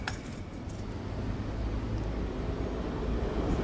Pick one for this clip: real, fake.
real